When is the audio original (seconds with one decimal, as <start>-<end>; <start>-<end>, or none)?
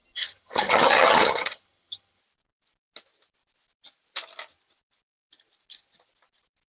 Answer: 2.2-6.7